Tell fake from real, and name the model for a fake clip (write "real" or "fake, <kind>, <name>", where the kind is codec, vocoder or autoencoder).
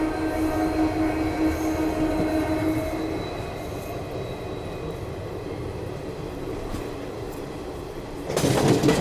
real